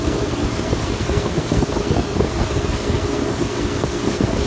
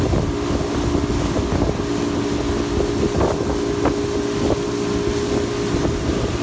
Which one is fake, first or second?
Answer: first